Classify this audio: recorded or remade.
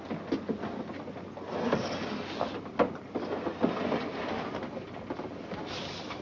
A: recorded